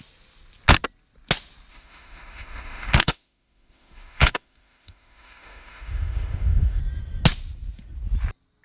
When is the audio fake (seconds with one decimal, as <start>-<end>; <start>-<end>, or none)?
1.7-6.8